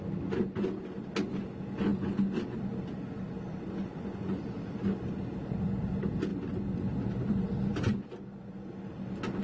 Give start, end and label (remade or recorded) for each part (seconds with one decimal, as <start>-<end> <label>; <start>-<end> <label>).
0.0-3.8 recorded; 3.8-4.4 remade; 4.4-9.4 recorded